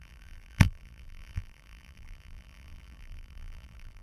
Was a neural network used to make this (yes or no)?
yes